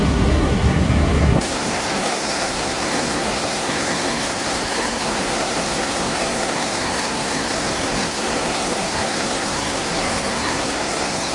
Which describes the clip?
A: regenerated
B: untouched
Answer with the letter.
A